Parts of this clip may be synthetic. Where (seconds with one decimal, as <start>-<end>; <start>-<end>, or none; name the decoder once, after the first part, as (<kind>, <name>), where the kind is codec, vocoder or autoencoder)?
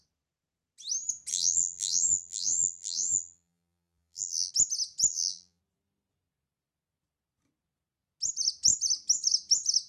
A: 1.3-4.5 (vocoder, BigVGAN v2); 5.1-5.6